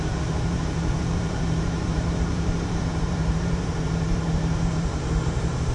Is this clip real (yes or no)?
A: no